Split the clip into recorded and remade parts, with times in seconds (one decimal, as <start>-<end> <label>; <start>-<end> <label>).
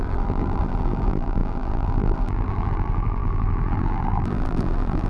0.0-5.1 remade